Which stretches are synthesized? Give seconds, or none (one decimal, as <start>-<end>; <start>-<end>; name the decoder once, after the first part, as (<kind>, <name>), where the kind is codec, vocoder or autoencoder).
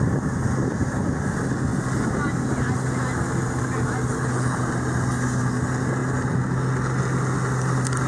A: 4.1-4.6 (codec, HILCodec)